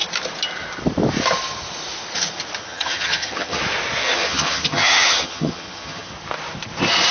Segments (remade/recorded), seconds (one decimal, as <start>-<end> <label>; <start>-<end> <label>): 0.0-2.6 recorded; 2.6-3.6 remade; 3.6-4.0 recorded; 4.0-6.1 remade; 6.1-7.1 recorded